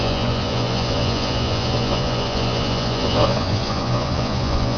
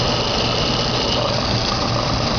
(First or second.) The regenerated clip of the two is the first